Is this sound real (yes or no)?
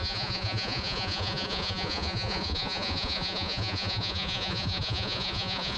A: no